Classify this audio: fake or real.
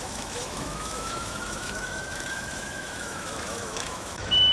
fake